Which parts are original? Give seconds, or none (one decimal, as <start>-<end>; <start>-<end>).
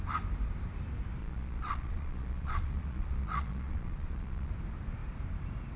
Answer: 0.0-1.2; 4.5-5.8